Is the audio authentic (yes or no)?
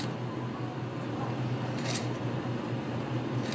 yes